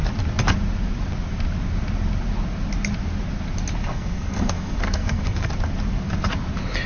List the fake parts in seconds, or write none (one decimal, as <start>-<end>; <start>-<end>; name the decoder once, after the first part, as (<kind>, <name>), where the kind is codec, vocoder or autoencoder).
3.8-5.5 (codec, SNAC)